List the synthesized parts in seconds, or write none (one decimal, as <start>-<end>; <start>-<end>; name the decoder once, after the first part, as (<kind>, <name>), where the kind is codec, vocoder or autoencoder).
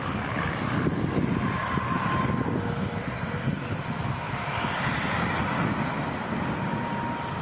1.6-2.2 (vocoder, BigVGAN v2); 4.1-5.5